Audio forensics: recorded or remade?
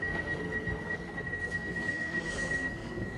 remade